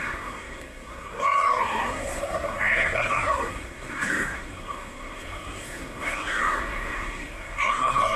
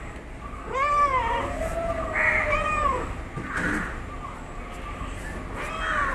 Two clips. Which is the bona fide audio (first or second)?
second